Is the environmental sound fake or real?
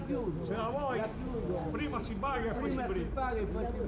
real